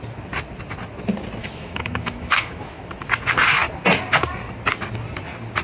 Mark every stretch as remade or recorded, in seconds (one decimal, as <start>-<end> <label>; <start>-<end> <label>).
0.0-1.4 recorded; 1.4-2.8 remade; 2.8-5.6 recorded